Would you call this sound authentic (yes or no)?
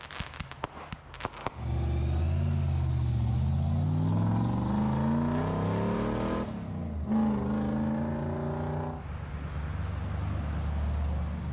yes